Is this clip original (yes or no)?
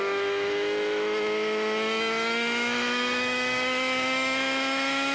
no